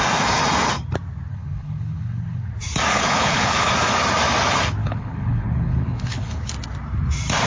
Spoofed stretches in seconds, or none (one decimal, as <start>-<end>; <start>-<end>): 1.3-2.5; 2.9-3.7; 4.8-6.5